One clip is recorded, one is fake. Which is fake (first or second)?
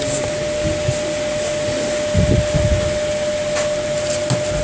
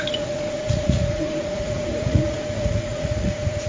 second